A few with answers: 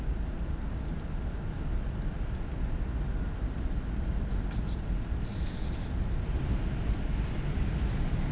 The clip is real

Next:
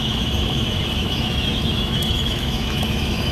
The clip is fake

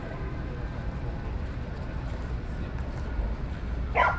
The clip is real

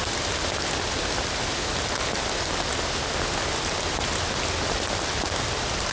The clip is real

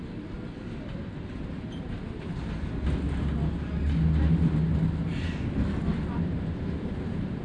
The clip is real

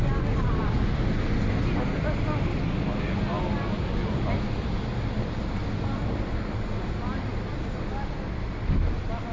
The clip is real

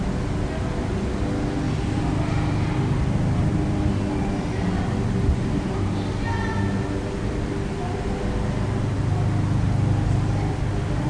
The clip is real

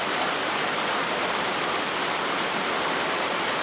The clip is real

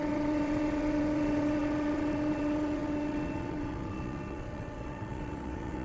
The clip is fake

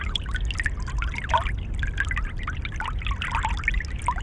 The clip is real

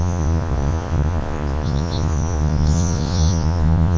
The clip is fake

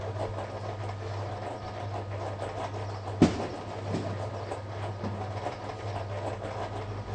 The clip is real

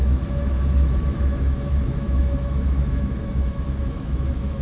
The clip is fake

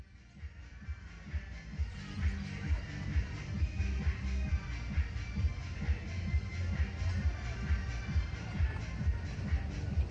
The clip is real